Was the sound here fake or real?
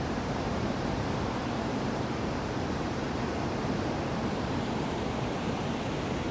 fake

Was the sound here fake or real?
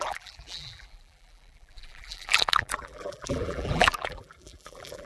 fake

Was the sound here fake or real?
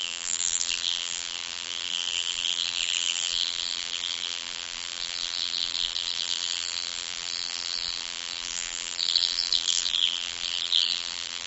fake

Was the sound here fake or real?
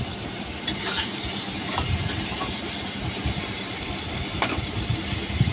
fake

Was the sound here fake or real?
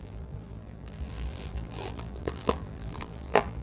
fake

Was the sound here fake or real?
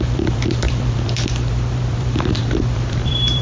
fake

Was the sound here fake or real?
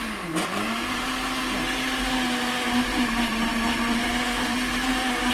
fake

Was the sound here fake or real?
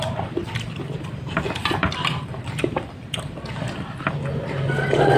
fake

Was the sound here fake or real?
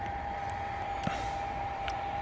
fake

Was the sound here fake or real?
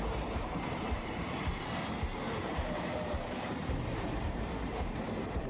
fake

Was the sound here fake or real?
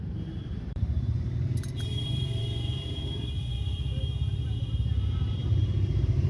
fake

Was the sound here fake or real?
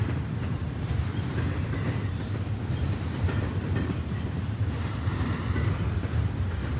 fake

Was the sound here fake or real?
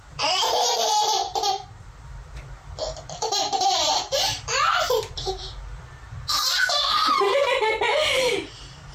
fake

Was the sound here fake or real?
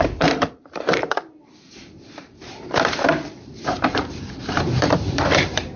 fake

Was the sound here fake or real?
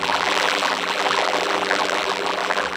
fake